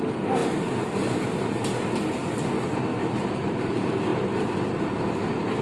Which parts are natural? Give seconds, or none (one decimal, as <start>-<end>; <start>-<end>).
4.1-4.8

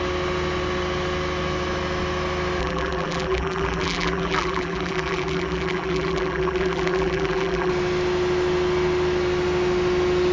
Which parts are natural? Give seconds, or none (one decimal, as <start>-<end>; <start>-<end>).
0.0-2.6; 7.7-10.3

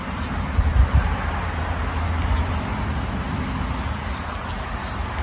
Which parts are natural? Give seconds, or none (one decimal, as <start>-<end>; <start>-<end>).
0.0-5.2

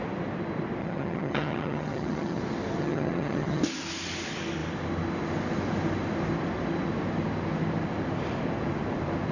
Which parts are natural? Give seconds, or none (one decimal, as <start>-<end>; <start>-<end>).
0.0-0.8; 2.4-2.8; 3.6-9.3

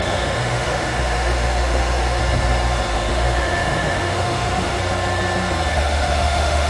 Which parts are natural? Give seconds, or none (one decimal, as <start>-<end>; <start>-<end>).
2.2-3.1; 4.8-5.7

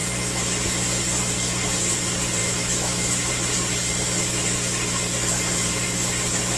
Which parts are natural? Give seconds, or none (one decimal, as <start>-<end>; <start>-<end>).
0.0-2.4; 3.3-6.6

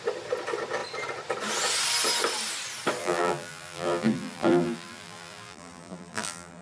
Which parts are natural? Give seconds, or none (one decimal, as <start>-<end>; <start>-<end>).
0.0-3.0